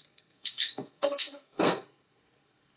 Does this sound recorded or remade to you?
remade